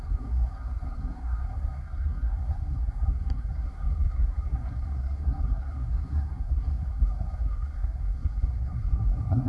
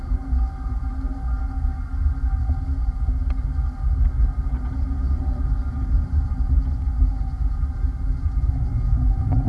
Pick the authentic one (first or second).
second